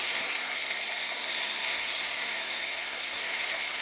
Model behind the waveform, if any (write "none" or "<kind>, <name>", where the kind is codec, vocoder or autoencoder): codec, SNAC